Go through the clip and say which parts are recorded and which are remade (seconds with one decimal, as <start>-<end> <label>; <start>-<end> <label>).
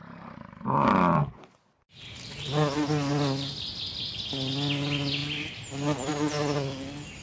0.0-7.2 recorded